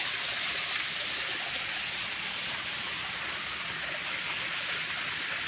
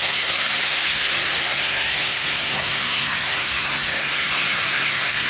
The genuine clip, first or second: first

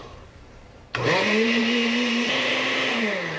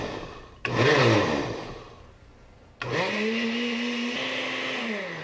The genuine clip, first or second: second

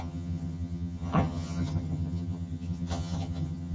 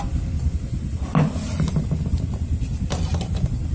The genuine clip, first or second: second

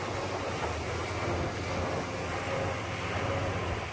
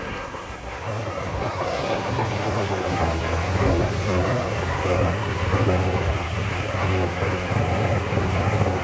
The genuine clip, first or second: first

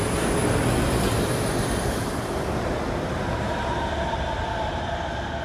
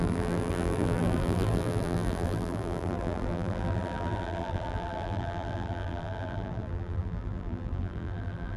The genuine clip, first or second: first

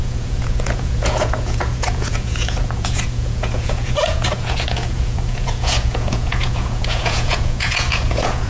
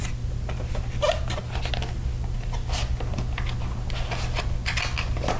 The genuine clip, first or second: second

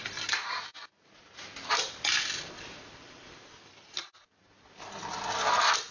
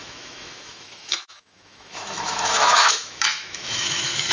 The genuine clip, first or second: first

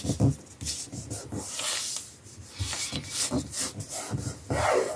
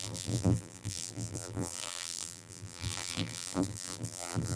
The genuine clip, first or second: first